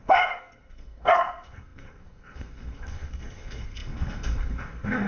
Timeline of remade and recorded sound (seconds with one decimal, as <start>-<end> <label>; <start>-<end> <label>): 0.0-5.1 remade